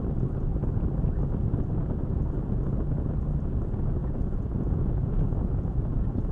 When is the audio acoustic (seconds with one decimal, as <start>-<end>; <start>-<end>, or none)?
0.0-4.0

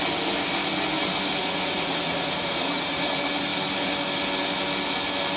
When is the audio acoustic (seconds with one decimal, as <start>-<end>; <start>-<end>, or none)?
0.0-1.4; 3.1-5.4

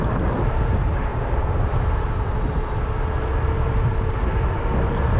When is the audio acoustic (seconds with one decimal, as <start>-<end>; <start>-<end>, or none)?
0.0-5.2

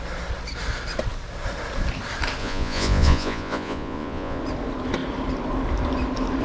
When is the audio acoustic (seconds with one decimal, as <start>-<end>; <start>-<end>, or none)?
0.0-2.4; 4.4-6.4

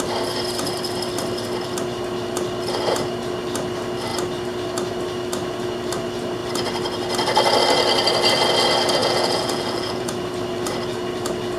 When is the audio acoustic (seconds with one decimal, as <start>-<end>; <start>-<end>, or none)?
0.0-9.0; 10.1-11.6

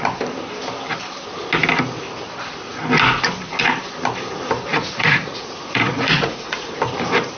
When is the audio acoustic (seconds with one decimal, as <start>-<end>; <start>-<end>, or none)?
0.0-4.7; 6.7-7.4